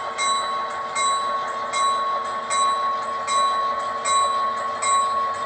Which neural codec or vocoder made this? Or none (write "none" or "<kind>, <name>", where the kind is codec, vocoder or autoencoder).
none